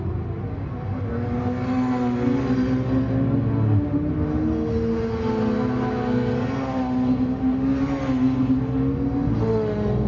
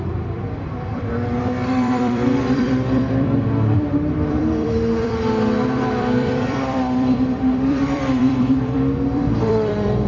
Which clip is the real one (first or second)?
first